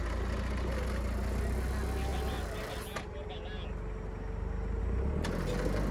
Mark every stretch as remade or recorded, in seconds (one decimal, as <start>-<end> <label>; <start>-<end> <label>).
0.0-5.9 recorded